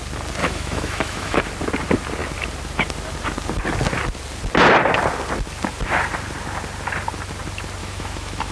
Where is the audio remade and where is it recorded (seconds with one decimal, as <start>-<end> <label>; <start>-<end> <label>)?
0.0-0.4 recorded; 0.4-1.4 remade; 1.4-7.8 recorded; 7.8-8.5 remade